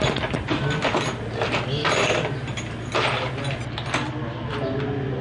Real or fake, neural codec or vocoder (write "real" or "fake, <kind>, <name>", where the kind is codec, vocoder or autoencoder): real